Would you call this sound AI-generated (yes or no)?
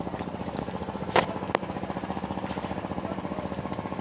no